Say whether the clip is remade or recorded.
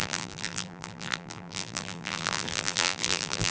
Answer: remade